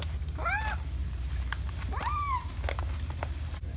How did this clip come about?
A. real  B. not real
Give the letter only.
A